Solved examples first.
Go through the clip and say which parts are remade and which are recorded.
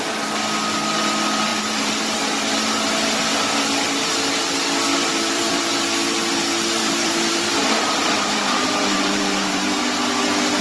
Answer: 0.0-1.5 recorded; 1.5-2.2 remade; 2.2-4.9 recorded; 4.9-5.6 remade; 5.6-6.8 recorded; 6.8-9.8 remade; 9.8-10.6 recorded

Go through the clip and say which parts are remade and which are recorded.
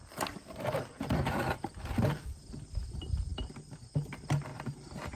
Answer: 0.0-5.2 recorded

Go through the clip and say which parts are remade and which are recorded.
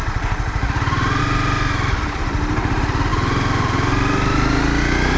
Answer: 0.0-5.2 recorded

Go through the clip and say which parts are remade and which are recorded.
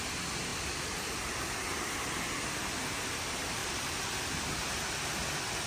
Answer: 0.0-3.6 recorded; 3.6-4.3 remade; 4.3-5.7 recorded